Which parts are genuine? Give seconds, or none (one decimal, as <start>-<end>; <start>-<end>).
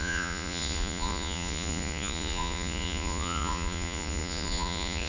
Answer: none